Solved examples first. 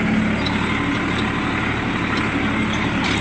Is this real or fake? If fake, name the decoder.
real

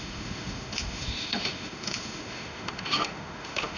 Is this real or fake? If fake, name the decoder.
fake, autoencoder, DAC-VAE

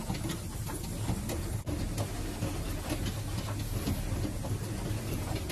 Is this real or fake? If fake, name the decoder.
real